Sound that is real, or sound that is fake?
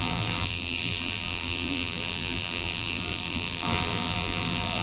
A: fake